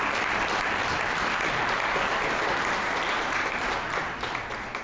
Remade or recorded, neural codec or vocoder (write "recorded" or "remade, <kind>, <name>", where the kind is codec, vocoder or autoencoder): recorded